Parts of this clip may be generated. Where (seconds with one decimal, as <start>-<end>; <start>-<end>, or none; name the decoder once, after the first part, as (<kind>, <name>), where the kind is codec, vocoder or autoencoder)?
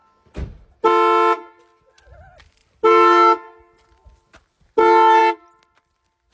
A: none